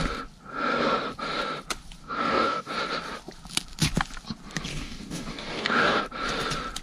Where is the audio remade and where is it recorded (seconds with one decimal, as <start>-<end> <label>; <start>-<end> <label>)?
0.0-2.0 recorded; 2.0-2.7 remade; 2.7-4.7 recorded; 4.7-6.0 remade; 6.0-6.8 recorded

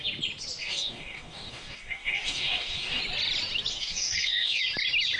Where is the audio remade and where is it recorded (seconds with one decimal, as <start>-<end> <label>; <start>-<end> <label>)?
0.0-0.6 recorded; 0.6-3.0 remade; 3.0-3.7 recorded; 3.7-4.6 remade; 4.6-5.2 recorded

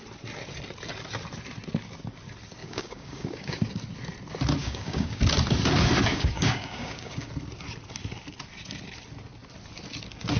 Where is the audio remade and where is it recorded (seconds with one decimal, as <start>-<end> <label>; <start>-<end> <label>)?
0.0-2.6 recorded; 2.6-3.6 remade; 3.6-4.6 recorded; 4.6-5.2 remade; 5.2-6.1 recorded; 6.1-7.3 remade; 7.3-10.4 recorded